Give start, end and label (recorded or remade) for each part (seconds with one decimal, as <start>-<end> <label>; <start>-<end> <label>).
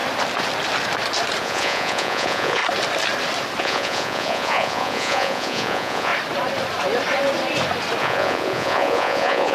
0.0-1.4 recorded; 1.4-2.6 remade; 2.6-3.6 recorded; 3.6-6.1 remade; 6.1-8.0 recorded; 8.0-9.5 remade